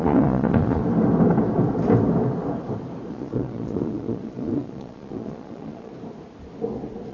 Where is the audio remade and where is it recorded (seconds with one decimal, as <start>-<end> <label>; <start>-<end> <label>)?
0.0-0.8 remade; 0.8-3.1 recorded; 3.1-5.9 remade; 5.9-7.1 recorded